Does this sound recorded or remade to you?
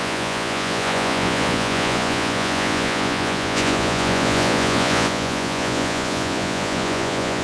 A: remade